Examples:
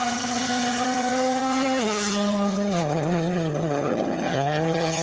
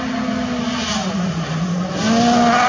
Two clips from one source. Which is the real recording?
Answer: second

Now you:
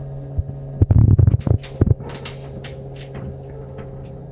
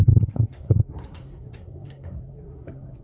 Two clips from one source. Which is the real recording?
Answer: first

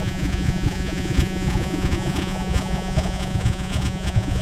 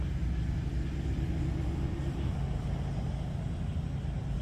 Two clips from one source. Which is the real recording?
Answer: second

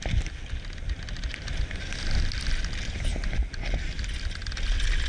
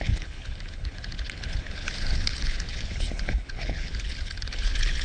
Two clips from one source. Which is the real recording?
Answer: first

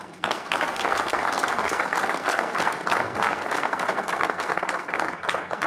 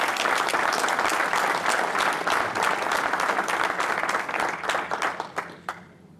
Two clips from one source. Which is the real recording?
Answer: second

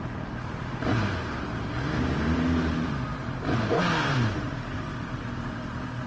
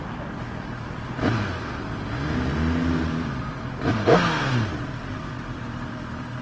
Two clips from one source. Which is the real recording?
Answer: second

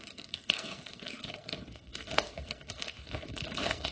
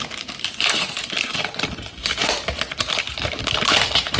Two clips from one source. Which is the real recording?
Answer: second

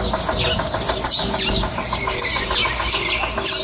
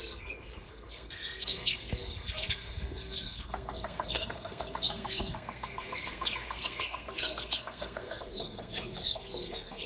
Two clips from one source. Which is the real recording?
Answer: first